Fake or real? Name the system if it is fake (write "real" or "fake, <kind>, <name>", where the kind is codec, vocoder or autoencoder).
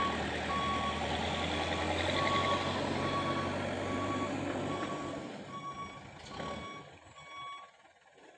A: real